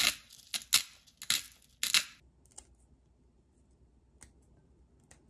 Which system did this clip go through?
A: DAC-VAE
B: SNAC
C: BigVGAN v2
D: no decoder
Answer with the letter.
D